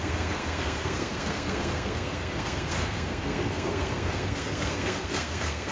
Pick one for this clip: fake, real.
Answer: fake